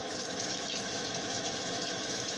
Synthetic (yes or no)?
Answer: yes